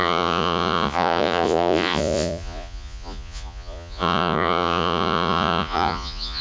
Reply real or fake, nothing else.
fake